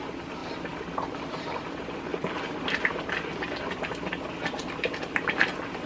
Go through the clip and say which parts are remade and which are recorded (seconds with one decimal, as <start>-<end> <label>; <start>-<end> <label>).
0.0-5.9 recorded